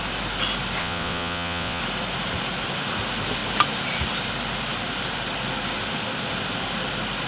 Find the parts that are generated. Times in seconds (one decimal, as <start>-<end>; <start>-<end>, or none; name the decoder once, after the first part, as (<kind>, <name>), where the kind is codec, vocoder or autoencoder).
0.8-1.8 (vocoder, WaveNeXt)